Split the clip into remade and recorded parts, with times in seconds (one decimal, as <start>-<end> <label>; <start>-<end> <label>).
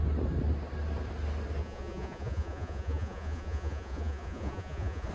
0.0-1.6 recorded; 1.6-5.1 remade